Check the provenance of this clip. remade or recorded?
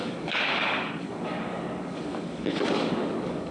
remade